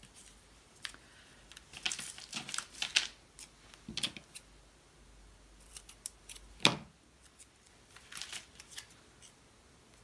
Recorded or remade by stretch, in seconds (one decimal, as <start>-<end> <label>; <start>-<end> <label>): 0.0-1.5 remade; 1.5-10.0 recorded